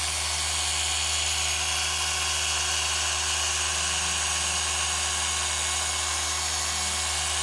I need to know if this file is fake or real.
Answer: real